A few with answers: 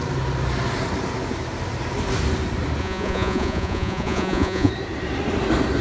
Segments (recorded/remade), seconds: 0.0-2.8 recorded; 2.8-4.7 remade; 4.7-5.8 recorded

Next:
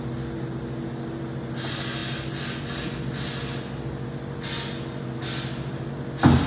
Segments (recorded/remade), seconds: 0.0-6.5 recorded

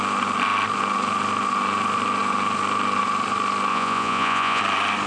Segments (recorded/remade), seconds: 0.0-3.7 recorded; 3.7-4.6 remade; 4.6-5.1 recorded